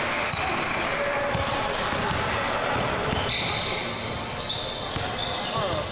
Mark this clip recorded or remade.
recorded